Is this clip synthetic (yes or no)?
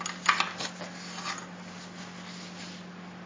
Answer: no